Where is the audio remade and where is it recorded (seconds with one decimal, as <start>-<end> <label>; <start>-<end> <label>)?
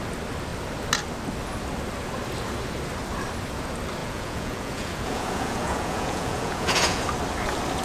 0.0-4.0 recorded; 4.0-7.0 remade; 7.0-7.8 recorded